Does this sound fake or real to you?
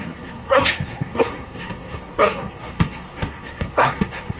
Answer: fake